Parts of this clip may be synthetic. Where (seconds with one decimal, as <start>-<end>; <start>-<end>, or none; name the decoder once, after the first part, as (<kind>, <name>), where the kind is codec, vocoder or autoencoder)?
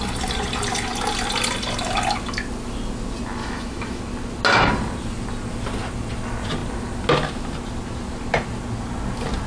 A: 3.4-4.0 (autoencoder, DAC-VAE)